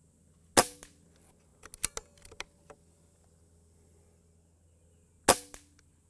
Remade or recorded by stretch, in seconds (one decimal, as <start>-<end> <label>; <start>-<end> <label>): 0.0-6.1 recorded